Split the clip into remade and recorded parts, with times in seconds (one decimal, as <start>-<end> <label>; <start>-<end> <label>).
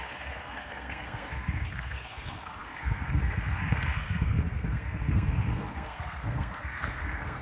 0.0-7.4 remade